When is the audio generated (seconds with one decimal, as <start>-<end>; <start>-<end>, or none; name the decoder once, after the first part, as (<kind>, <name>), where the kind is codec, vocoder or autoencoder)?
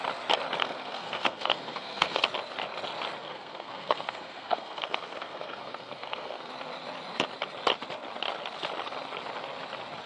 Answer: 0.6-2.2 (codec, SNAC); 3.2-6.5